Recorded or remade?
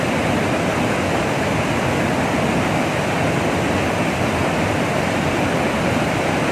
recorded